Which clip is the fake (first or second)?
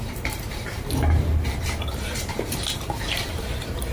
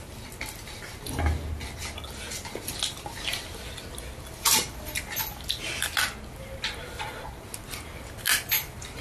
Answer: first